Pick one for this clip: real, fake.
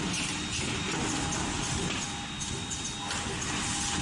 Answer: real